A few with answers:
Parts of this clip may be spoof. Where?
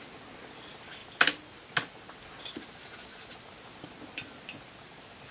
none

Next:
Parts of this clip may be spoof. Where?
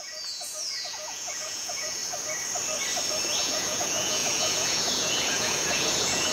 0.0-2.0 (vocoder, Vocos); 3.4-6.3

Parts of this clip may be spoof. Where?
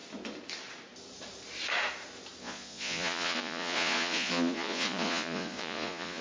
2.4-6.2 (vocoder, Vocos)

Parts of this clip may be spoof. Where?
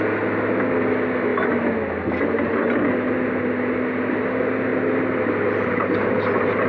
none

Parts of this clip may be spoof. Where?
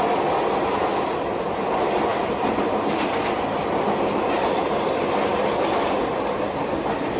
none